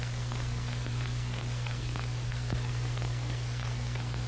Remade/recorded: remade